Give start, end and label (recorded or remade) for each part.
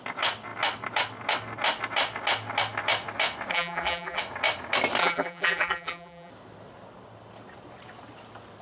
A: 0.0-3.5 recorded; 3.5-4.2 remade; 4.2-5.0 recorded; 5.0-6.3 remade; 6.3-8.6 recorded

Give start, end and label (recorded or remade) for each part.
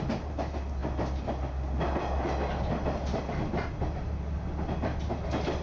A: 0.0-5.6 recorded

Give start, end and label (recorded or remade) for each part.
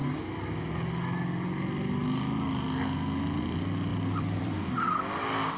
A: 0.0-3.9 recorded; 3.9-4.9 remade; 4.9-5.6 recorded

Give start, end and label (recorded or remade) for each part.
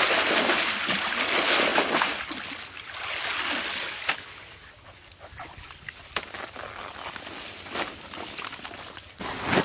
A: 0.0-9.6 recorded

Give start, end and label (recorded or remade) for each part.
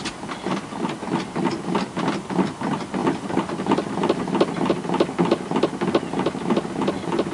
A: 0.0-7.3 recorded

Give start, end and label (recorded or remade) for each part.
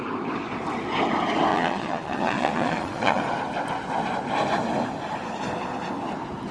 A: 0.0-1.5 recorded; 1.5-3.2 remade; 3.2-6.5 recorded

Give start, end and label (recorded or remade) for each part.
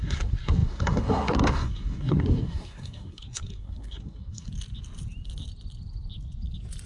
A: 0.0-4.5 remade; 4.5-6.9 recorded